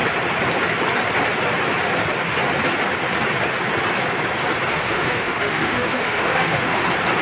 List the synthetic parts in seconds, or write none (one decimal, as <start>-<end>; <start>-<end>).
4.7-6.8